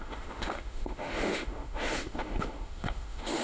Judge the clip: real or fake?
fake